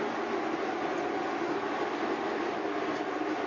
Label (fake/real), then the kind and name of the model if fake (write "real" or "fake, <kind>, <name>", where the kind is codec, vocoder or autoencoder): real